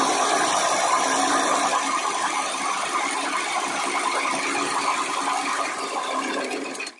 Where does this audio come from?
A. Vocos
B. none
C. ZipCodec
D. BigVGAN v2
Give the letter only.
D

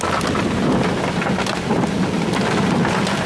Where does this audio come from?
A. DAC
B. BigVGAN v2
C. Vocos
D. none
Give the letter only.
D